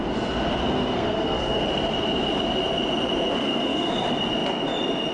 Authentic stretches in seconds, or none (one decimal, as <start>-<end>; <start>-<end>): 0.0-0.6; 1.6-3.4; 3.9-5.1